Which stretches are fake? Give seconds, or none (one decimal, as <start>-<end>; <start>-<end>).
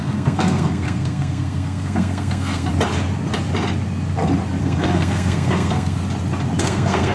0.0-2.7; 4.6-6.0; 6.6-7.1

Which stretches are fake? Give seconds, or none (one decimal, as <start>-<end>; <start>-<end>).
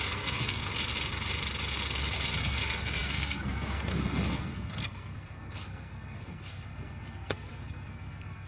0.0-0.6; 2.4-8.5